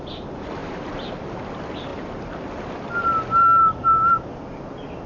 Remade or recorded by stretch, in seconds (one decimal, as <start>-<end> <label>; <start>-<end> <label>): 0.0-0.6 recorded; 0.6-1.1 remade; 1.1-1.9 recorded; 1.9-2.5 remade; 2.5-5.1 recorded